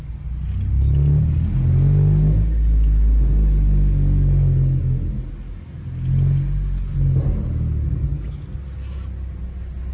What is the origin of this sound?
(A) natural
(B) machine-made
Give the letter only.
A